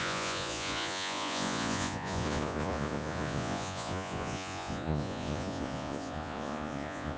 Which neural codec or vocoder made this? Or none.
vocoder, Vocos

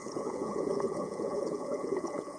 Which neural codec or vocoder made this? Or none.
vocoder, Vocos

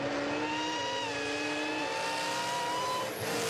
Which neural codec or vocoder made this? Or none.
none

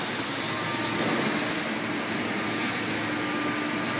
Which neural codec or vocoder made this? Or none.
none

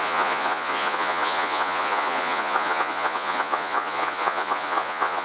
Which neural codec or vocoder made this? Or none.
vocoder, Vocos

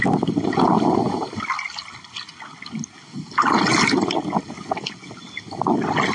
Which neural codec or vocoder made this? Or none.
none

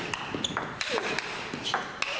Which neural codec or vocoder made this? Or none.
none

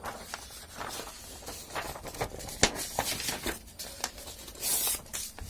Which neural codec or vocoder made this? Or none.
none